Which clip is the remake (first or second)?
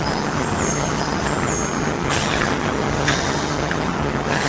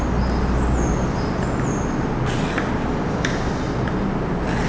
first